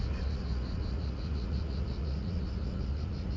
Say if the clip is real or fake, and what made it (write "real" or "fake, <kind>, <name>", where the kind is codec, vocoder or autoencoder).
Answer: fake, vocoder, Vocos